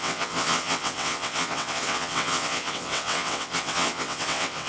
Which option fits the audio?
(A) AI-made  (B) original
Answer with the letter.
A